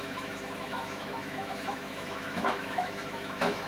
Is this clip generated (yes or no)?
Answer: yes